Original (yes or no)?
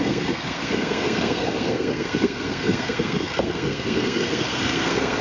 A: no